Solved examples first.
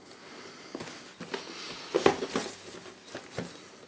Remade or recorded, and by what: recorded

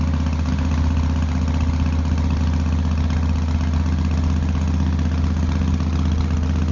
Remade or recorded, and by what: recorded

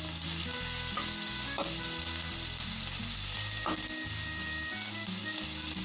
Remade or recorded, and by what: recorded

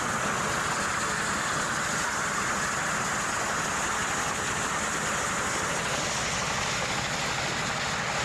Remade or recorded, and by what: recorded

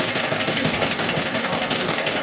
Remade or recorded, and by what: remade, codec, DAC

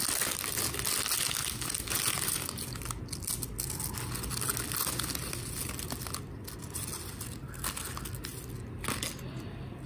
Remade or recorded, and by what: recorded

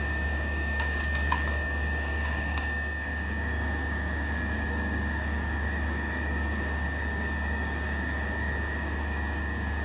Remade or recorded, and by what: remade, codec, DAC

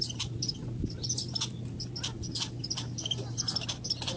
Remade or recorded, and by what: recorded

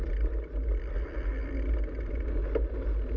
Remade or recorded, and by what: recorded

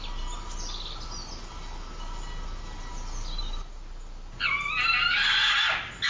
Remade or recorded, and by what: recorded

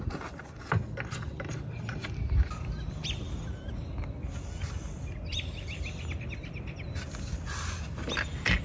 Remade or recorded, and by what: recorded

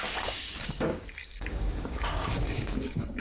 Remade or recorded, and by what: remade, codec, DAC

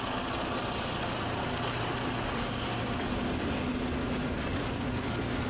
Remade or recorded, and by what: recorded